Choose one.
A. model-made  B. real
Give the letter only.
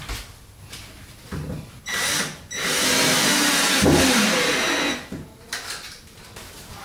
B